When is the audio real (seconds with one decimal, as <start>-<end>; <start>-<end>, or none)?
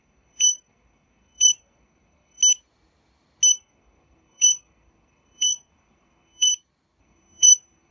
2.4-3.5; 6.5-7.0